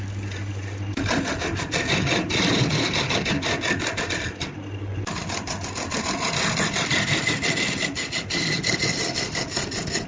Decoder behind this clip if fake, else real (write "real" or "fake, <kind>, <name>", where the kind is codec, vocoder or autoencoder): real